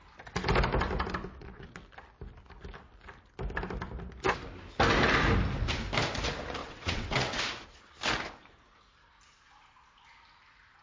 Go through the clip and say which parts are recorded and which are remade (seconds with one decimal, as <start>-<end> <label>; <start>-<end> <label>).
0.0-1.3 recorded; 1.3-1.8 remade; 1.8-6.6 recorded; 6.6-7.4 remade; 7.4-10.8 recorded